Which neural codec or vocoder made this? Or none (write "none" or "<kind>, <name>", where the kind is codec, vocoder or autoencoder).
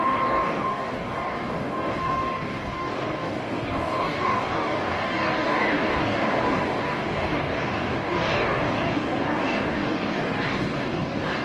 codec, DAC